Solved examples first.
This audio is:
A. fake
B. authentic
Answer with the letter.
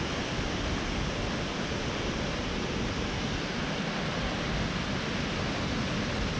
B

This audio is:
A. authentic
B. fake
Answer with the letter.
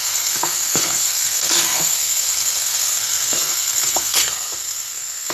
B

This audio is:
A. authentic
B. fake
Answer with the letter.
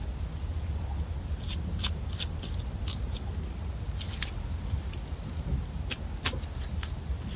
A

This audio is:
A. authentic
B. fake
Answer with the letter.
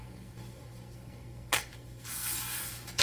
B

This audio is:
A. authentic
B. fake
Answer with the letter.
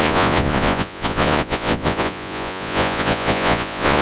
B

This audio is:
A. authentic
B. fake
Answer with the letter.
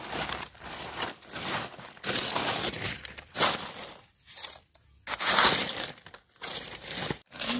A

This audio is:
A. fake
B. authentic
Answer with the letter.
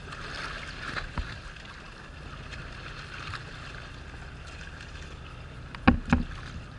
B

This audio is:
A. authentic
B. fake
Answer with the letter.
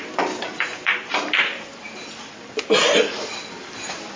B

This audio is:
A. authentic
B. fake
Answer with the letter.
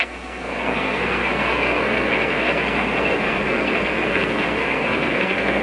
B